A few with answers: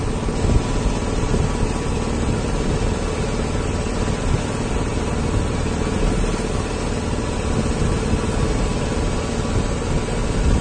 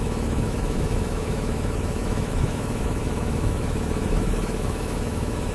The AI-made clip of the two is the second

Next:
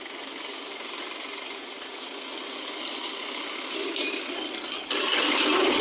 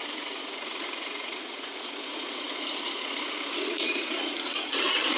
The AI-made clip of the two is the second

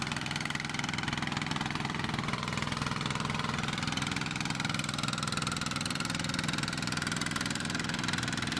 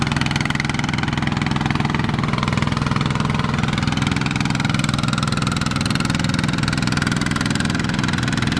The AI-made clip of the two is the first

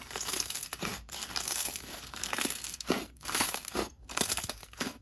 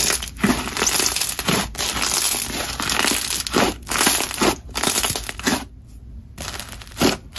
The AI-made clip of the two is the first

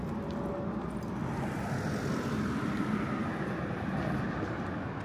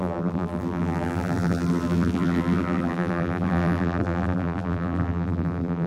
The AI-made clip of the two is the second